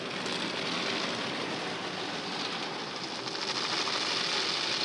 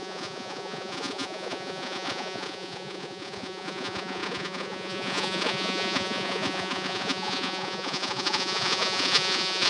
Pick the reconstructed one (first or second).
second